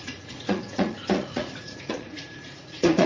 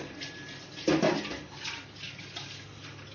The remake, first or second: first